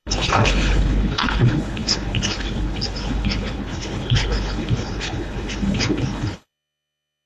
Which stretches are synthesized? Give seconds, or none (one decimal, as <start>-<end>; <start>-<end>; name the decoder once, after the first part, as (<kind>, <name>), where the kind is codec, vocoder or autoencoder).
0.0-7.3 (codec, HILCodec)